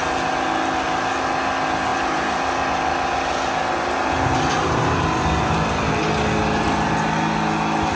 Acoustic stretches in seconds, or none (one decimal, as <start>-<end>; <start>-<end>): 0.0-8.0